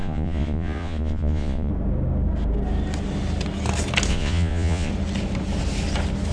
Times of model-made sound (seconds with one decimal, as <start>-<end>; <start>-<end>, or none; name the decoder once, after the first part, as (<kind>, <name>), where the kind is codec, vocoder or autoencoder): 0.0-1.7 (vocoder, Vocos); 4.1-4.9